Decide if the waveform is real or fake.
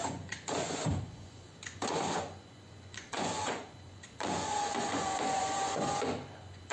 fake